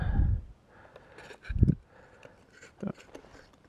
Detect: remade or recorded recorded